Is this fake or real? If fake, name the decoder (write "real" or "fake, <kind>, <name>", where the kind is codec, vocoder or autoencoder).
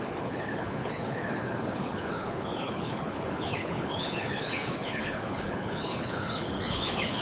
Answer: fake, codec, HILCodec